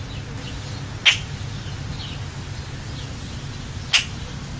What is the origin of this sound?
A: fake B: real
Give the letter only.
B